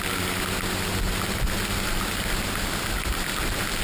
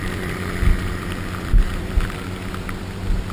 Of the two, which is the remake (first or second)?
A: second